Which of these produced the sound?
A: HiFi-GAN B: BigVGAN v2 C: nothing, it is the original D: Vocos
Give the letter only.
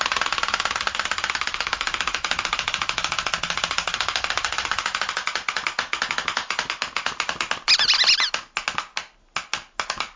C